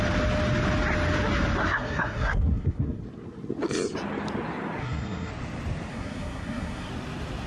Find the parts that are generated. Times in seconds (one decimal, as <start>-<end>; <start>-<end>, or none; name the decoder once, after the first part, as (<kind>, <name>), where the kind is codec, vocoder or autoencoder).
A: 1.6-3.0 (codec, SNAC); 4.8-5.3; 5.9-6.9